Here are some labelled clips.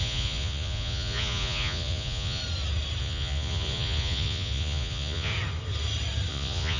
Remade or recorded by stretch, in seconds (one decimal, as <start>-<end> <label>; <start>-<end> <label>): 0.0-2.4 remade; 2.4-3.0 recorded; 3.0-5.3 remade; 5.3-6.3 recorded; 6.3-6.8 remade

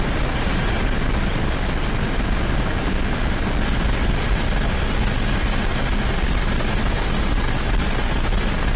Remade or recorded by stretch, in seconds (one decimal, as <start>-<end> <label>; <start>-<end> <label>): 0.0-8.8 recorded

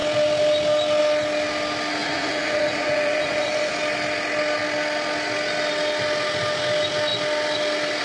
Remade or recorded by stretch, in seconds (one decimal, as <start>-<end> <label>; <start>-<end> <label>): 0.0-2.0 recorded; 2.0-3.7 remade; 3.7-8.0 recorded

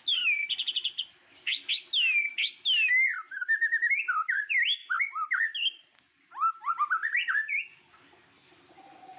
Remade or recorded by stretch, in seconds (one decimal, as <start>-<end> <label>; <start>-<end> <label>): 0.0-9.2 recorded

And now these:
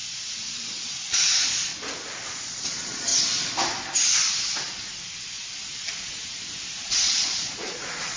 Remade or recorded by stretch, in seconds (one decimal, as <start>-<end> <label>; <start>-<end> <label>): 0.0-0.8 recorded; 0.8-1.7 remade; 1.7-2.3 recorded; 2.3-3.1 remade; 3.1-6.8 recorded; 6.8-8.2 remade

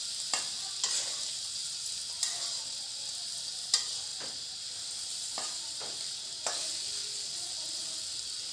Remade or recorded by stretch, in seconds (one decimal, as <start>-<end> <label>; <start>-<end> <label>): 0.0-7.0 recorded; 7.0-7.5 remade; 7.5-8.5 recorded

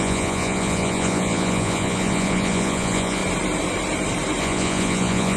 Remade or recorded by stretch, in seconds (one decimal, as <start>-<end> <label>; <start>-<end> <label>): 0.0-3.2 remade; 3.2-4.4 recorded; 4.4-5.4 remade

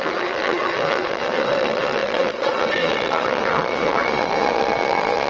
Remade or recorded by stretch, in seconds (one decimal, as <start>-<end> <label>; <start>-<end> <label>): 0.0-5.3 remade